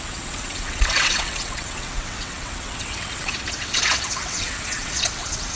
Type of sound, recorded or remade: remade